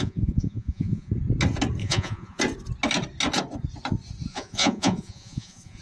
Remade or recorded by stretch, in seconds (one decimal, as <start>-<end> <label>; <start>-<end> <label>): 0.0-1.1 remade; 1.1-1.8 recorded; 1.8-2.4 remade; 2.4-4.3 recorded; 4.3-5.8 remade

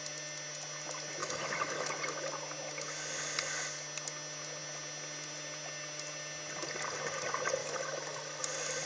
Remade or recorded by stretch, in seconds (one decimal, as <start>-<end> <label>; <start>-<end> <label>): 0.0-1.2 recorded; 1.2-1.9 remade; 1.9-7.6 recorded; 7.6-8.4 remade; 8.4-8.9 recorded

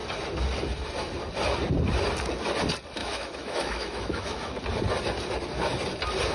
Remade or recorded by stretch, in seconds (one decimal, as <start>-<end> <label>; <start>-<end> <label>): 0.0-3.0 recorded; 3.0-4.6 remade; 4.6-6.3 recorded

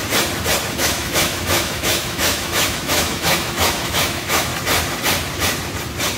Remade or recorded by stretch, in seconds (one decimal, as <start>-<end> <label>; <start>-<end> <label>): 0.0-0.7 recorded; 0.7-4.5 remade; 4.5-6.2 recorded

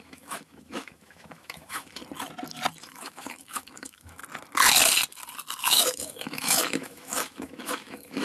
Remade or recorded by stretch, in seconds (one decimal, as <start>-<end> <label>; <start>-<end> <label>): 0.0-2.0 remade; 2.0-2.8 recorded; 2.8-4.2 remade; 4.2-5.6 recorded; 5.6-8.2 remade

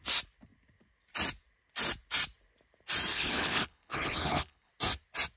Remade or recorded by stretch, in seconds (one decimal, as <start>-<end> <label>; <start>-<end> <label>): 0.0-3.1 recorded; 3.1-4.7 remade; 4.7-5.4 recorded

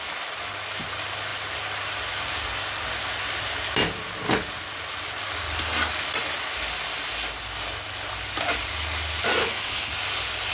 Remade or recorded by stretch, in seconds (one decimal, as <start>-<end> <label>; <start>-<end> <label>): 0.0-9.4 recorded; 9.4-9.9 remade; 9.9-10.5 recorded

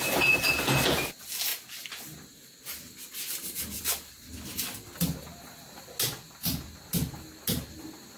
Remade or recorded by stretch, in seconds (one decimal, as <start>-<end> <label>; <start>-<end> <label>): 0.0-8.2 recorded